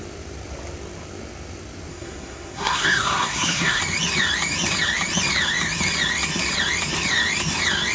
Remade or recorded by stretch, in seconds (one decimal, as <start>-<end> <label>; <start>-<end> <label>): 0.0-1.9 recorded; 1.9-3.8 remade; 3.8-7.9 recorded